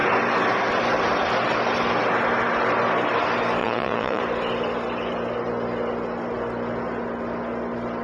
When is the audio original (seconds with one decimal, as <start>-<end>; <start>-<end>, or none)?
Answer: 0.0-3.6; 4.2-8.0